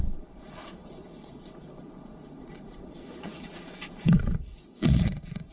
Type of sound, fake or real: fake